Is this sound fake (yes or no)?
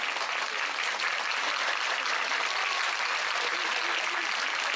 no